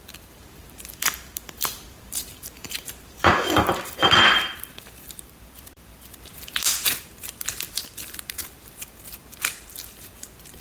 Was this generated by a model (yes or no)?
yes